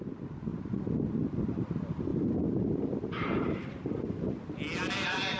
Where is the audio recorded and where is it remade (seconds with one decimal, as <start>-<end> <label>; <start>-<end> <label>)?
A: 0.0-5.4 recorded